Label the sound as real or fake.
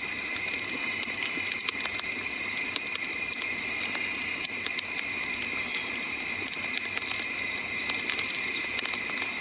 real